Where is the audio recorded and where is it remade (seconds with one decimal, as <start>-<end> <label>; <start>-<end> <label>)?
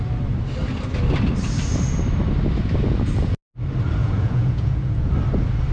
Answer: 0.0-4.0 recorded; 4.0-5.1 remade; 5.1-5.7 recorded